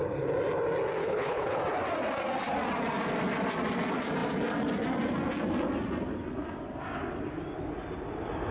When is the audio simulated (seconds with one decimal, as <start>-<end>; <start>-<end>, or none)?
1.0-1.6